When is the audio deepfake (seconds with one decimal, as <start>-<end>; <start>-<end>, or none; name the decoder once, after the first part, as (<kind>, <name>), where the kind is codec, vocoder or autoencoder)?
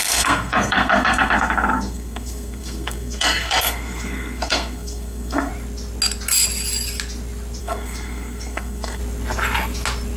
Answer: 0.0-5.5 (codec, SNAC); 7.6-9.0